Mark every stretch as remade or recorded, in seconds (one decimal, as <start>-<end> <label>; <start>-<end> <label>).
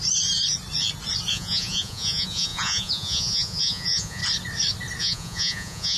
0.0-1.3 recorded; 1.3-4.2 remade; 4.2-5.0 recorded; 5.0-6.0 remade